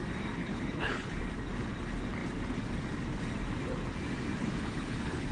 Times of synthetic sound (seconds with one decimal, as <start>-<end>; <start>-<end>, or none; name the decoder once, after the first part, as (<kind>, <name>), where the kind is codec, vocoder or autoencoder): 0.4-1.2 (codec, HILCodec); 4.4-5.3